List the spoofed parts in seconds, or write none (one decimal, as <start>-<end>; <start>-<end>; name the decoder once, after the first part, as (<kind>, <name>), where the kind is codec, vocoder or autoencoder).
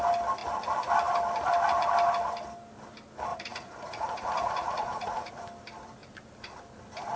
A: 3.3-5.3 (vocoder, Vocos)